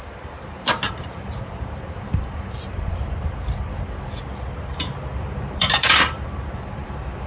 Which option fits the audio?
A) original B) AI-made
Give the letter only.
B